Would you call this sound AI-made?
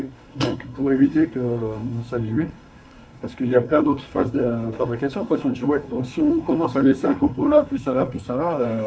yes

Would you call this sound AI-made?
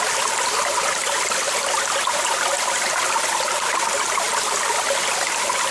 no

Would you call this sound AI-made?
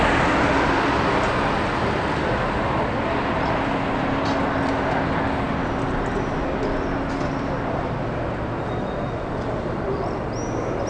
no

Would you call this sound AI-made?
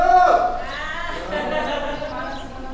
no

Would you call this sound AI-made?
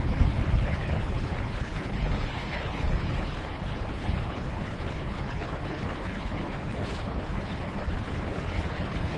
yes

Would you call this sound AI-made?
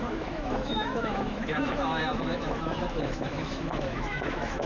yes